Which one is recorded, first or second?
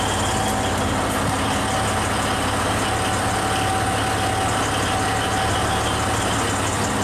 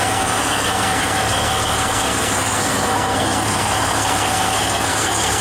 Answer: first